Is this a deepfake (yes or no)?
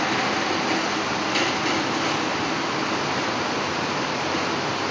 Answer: no